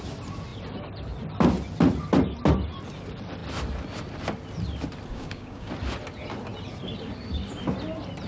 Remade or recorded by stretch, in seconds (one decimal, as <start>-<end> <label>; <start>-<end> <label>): 0.0-5.1 recorded; 5.1-5.7 remade; 5.7-8.3 recorded